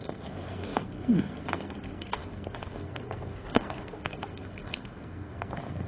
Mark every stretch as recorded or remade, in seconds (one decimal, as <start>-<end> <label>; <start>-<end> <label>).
0.0-5.9 remade